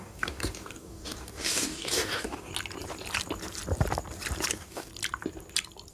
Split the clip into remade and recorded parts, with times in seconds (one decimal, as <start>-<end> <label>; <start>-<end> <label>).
0.0-2.5 remade; 2.5-4.5 recorded; 4.5-4.9 remade; 4.9-5.9 recorded